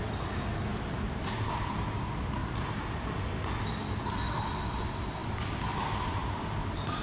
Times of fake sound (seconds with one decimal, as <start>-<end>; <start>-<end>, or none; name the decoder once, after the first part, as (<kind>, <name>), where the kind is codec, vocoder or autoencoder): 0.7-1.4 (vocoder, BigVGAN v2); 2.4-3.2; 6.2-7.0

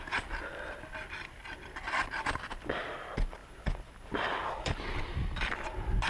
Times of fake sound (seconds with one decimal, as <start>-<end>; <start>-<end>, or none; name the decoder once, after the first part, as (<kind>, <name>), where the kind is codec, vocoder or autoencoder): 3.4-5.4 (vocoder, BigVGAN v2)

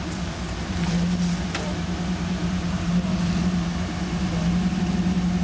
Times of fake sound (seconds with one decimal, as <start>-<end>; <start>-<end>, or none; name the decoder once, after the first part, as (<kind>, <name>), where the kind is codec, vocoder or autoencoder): none

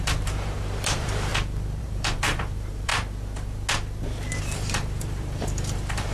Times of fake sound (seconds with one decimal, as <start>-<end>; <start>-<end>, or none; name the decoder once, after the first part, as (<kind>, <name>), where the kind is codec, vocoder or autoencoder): 0.0-1.3 (vocoder, BigVGAN v2); 1.8-2.9; 4.4-6.1

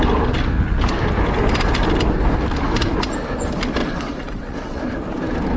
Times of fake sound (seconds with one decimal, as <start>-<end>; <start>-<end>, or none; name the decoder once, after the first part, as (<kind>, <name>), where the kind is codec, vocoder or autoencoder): 3.8-4.8 (vocoder, WaveNeXt)

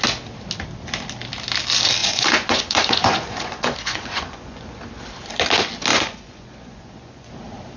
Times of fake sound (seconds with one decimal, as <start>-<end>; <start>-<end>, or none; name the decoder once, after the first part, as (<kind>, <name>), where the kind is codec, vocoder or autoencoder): 2.0-4.7 (vocoder, Vocos); 5.9-7.3

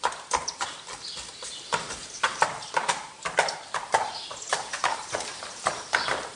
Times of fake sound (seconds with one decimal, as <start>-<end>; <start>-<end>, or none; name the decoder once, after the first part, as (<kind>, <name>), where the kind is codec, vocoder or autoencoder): 2.0-5.8 (vocoder, BigVGAN v2)

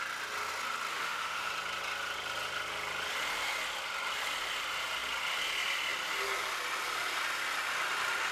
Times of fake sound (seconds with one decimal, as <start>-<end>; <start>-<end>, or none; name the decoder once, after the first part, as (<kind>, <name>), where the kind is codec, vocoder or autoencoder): 0.9-1.5 (autoencoder, DAC-VAE)